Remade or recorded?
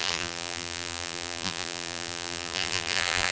remade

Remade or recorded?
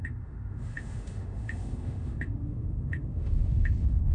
remade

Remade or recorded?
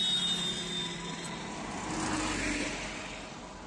recorded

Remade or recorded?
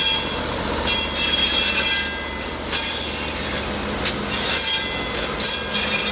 recorded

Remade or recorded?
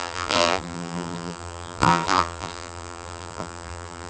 remade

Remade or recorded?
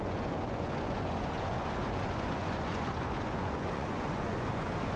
remade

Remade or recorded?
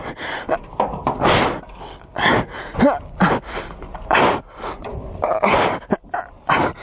recorded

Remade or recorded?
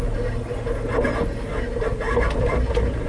recorded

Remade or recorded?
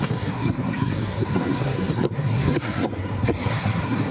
remade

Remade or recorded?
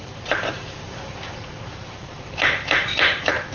remade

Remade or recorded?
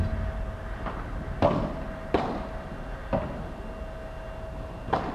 recorded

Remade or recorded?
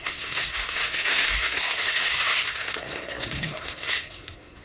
remade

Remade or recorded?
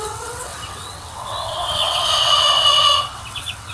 remade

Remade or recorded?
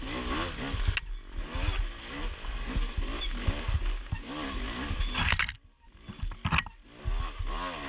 recorded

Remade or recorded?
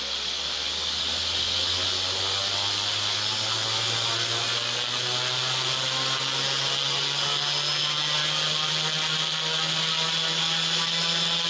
recorded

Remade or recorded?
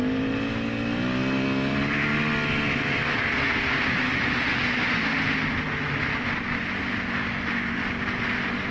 recorded